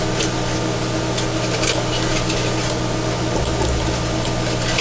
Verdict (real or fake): real